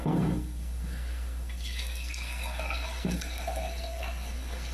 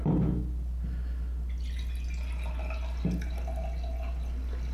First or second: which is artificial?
first